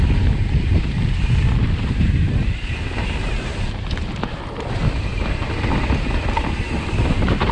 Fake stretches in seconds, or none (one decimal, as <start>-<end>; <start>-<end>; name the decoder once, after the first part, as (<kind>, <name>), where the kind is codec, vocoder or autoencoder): none